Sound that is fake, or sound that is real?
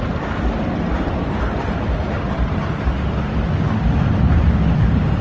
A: real